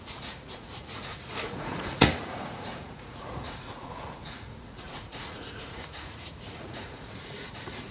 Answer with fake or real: fake